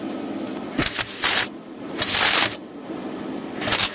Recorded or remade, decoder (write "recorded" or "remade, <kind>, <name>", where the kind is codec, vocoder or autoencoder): recorded